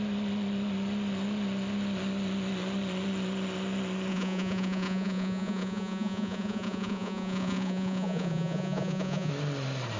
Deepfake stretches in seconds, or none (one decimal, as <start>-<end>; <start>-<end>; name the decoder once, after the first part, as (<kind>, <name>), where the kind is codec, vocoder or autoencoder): 4.1-9.3 (vocoder, Vocos)